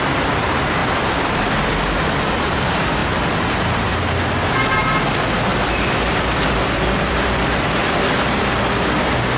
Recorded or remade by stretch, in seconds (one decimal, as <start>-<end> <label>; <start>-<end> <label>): 0.0-0.8 recorded; 0.8-2.5 remade; 2.5-5.5 recorded; 5.5-8.2 remade; 8.2-9.4 recorded

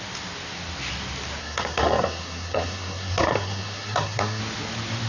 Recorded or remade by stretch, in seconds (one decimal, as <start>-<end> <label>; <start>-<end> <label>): 0.0-1.4 recorded; 1.4-4.4 remade; 4.4-5.1 recorded

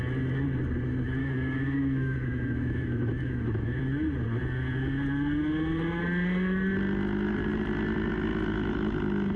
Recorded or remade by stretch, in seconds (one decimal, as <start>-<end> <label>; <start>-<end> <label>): 0.0-1.2 recorded; 1.2-3.8 remade; 3.8-9.4 recorded

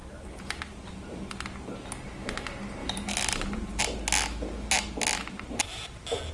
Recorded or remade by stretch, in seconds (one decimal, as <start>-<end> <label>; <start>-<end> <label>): 0.0-2.8 recorded; 2.8-3.8 remade; 3.8-6.3 recorded